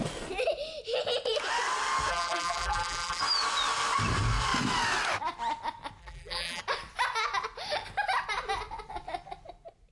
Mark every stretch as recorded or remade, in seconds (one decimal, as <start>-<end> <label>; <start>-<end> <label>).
0.0-2.1 recorded; 2.1-3.2 remade; 3.2-6.0 recorded; 6.0-6.6 remade; 6.6-9.9 recorded